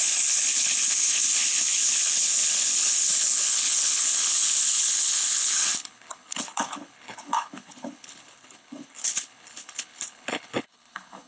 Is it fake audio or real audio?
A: fake